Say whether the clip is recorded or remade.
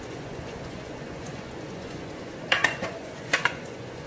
remade